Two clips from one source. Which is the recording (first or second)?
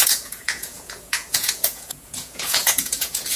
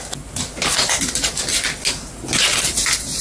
second